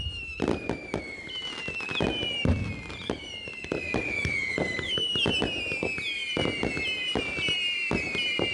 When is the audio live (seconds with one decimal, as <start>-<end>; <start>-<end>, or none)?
0.0-8.5